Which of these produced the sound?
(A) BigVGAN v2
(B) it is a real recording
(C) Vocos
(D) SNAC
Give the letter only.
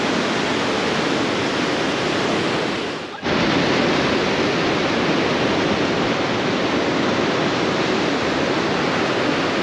B